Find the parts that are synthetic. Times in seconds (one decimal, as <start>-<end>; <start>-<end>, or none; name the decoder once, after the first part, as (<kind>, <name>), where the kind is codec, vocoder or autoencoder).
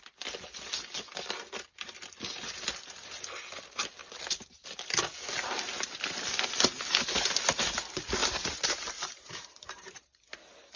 8.2-10.2 (vocoder, BigVGAN v2)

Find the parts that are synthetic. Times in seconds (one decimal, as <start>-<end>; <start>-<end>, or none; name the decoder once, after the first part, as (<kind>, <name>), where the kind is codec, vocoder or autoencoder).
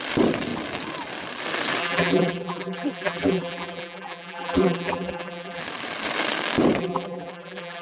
1.8-5.6 (vocoder, BigVGAN v2); 6.8-7.8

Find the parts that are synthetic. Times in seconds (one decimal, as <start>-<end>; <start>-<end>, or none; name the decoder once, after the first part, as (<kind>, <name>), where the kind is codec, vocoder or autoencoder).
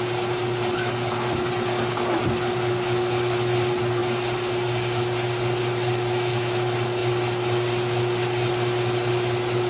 none